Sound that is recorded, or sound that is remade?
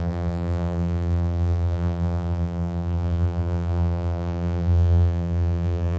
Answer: remade